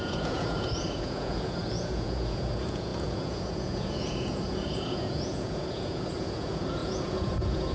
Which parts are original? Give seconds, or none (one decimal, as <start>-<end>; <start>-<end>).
none